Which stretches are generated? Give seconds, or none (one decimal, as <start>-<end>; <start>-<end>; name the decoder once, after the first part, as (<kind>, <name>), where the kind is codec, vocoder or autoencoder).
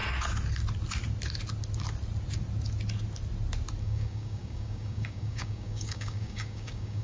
3.8-7.0 (codec, DAC)